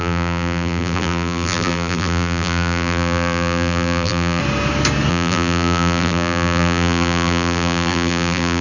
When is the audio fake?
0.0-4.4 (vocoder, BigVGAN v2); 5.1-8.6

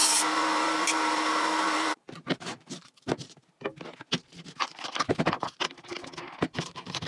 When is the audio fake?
0.0-3.5 (vocoder, BigVGAN v2)